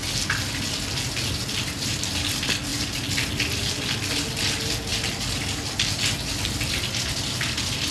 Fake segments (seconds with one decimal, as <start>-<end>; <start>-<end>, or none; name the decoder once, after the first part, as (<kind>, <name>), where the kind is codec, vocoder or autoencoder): none